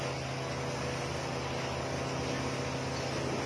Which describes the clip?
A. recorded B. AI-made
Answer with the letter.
A